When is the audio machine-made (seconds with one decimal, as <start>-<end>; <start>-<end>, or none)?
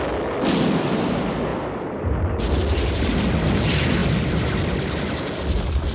none